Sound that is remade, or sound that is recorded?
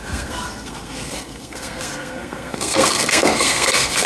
remade